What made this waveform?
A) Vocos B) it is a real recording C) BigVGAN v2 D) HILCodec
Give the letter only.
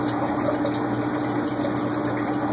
B